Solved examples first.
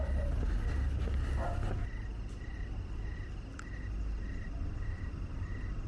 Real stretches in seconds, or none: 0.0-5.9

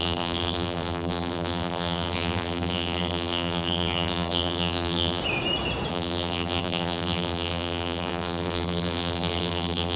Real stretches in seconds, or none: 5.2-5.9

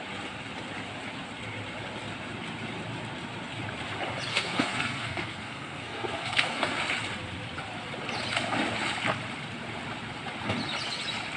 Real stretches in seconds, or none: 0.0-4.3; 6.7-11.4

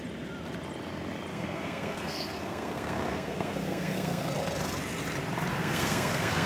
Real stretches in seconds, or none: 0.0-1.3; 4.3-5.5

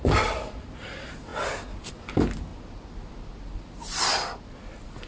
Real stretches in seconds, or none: 0.0-5.1